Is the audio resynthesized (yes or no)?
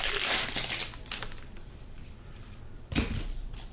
no